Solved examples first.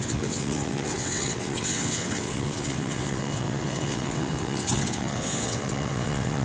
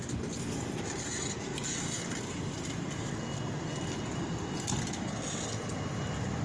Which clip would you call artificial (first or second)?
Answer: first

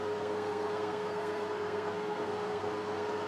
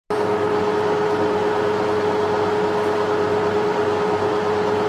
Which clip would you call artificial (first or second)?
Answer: first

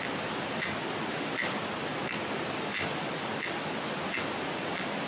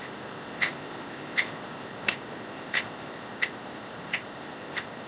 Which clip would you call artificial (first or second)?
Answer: second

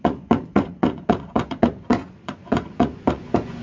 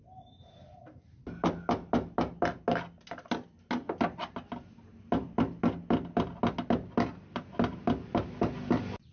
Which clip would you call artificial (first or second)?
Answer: first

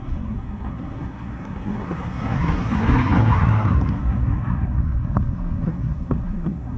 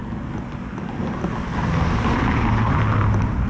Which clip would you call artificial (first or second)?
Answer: first